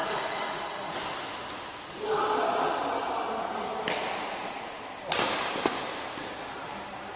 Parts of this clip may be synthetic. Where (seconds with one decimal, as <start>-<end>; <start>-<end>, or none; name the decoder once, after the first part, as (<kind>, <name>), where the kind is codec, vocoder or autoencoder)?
0.0-0.6 (vocoder, Vocos); 4.2-4.8